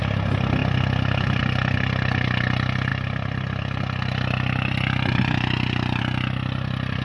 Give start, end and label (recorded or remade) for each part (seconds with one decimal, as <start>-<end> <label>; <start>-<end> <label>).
0.0-7.0 recorded